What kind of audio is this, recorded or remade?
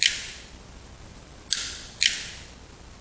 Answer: recorded